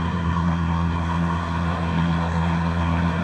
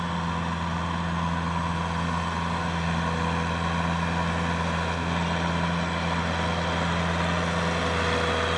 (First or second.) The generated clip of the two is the first